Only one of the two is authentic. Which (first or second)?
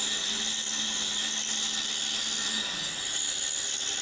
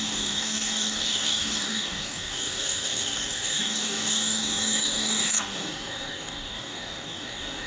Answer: first